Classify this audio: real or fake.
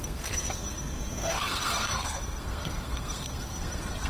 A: fake